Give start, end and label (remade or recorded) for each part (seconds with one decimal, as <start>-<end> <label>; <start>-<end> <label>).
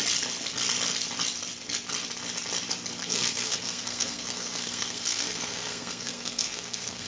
0.0-3.0 recorded; 3.0-7.1 remade